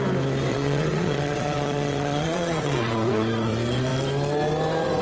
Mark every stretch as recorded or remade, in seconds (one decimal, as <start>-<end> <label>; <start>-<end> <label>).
0.0-0.5 recorded; 0.5-3.5 remade; 3.5-5.0 recorded